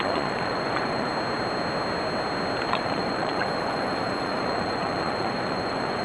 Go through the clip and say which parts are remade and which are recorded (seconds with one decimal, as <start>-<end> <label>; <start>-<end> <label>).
0.0-1.1 remade; 1.1-2.7 recorded; 2.7-6.0 remade